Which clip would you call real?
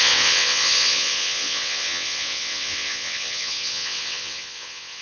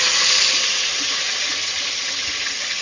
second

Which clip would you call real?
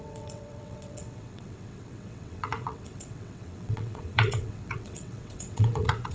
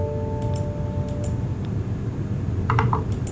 second